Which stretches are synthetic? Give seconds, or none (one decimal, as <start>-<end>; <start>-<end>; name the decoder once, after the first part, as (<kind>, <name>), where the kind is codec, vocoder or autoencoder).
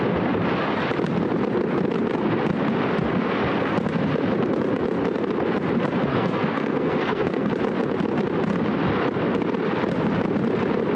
6.1-7.5 (codec, SNAC)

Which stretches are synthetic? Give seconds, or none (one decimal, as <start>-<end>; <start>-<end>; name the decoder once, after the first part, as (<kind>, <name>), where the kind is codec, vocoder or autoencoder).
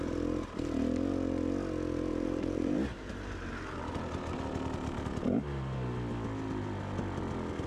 2.1-3.8 (vocoder, BigVGAN v2)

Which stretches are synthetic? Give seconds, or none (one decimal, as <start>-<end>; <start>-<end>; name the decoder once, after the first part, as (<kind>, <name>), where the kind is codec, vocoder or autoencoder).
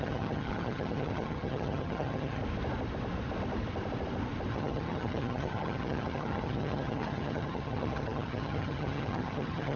0.0-2.4 (vocoder, HiFi-GAN); 4.5-9.8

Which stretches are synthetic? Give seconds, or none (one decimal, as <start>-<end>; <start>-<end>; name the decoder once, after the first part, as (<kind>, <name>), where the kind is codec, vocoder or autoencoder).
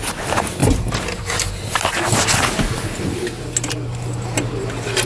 none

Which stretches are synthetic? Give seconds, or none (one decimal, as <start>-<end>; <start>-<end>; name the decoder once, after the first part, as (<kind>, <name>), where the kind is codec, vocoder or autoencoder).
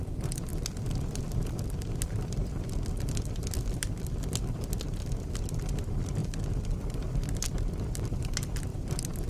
8.7-9.3 (vocoder, BigVGAN v2)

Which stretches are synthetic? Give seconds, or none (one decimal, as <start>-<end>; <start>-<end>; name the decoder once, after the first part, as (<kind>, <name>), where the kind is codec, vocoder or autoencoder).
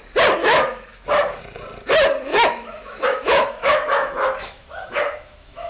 0.4-1.4 (autoencoder, DAC-VAE); 2.3-5.7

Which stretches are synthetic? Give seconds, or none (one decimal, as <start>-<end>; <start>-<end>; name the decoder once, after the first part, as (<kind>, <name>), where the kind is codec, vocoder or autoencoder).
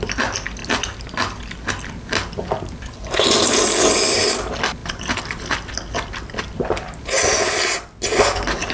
none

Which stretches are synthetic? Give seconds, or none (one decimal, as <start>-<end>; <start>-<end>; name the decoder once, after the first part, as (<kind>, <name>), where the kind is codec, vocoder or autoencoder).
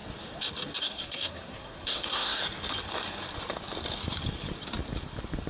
0.8-2.4 (codec, SNAC)